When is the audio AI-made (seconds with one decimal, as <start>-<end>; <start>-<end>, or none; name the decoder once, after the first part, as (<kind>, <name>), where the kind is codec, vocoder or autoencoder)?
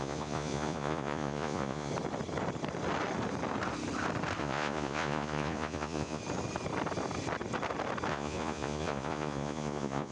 0.0-1.9 (vocoder, Vocos); 4.4-6.2; 8.1-10.1